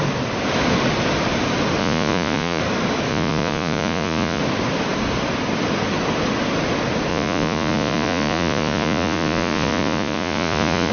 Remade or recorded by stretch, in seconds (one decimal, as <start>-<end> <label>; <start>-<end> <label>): 0.0-1.8 recorded; 1.8-2.6 remade; 2.6-3.1 recorded; 3.1-4.4 remade; 4.4-7.1 recorded; 7.1-10.9 remade